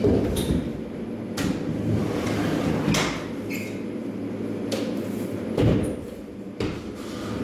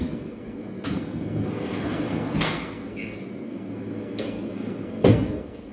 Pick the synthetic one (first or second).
second